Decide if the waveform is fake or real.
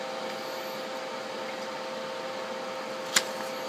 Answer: real